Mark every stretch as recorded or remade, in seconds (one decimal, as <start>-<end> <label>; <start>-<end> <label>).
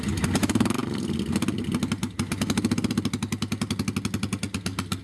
0.0-5.0 recorded